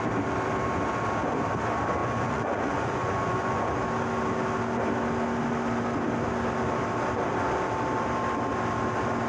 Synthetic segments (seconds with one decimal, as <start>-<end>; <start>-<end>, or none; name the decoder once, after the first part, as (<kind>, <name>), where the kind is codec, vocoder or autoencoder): 2.0-3.6 (vocoder, Vocos)